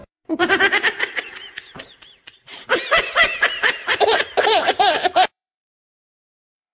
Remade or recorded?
remade